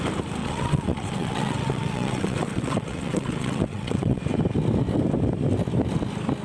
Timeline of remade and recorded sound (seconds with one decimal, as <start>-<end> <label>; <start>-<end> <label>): 0.0-0.4 recorded; 0.4-4.2 remade; 4.2-6.4 recorded

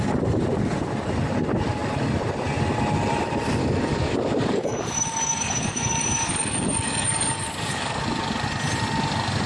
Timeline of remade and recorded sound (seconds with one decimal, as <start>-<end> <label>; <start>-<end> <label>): 0.0-3.6 recorded; 3.6-8.0 remade; 8.0-9.5 recorded

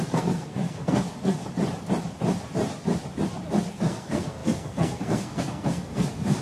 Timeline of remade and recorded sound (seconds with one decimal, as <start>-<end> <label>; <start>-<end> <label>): 0.0-1.4 remade; 1.4-3.7 recorded; 3.7-6.4 remade

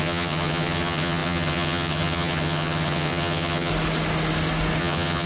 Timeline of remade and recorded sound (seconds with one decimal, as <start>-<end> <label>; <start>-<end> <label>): 0.0-3.7 remade; 3.7-4.8 recorded; 4.8-5.3 remade